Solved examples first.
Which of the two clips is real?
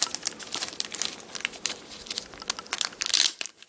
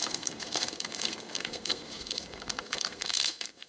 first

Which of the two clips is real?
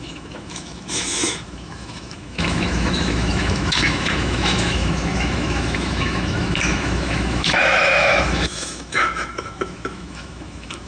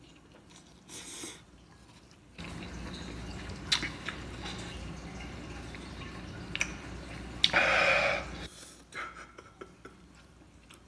second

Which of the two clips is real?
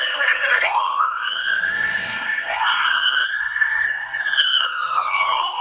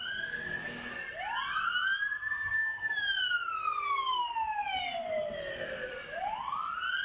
second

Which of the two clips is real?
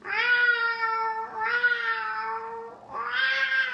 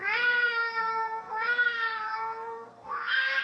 first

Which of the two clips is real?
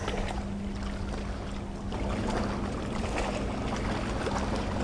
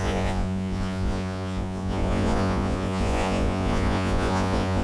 first